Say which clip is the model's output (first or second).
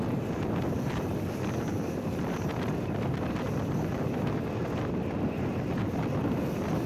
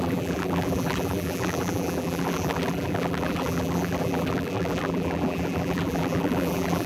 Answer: second